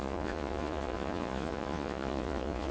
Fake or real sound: fake